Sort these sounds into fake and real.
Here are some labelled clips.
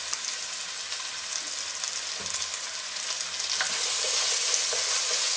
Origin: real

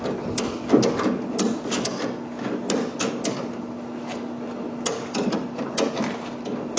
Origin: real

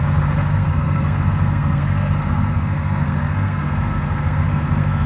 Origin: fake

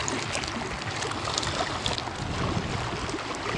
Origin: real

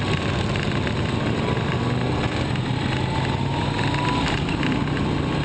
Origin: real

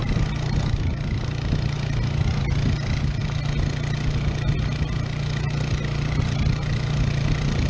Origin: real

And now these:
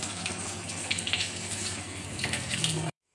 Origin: fake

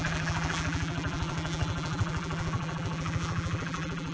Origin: fake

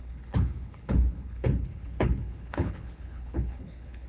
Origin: fake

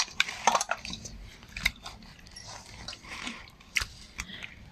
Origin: fake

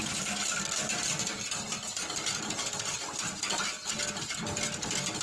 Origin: real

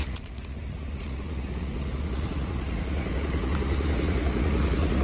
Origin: fake